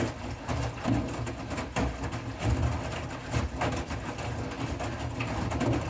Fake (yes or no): no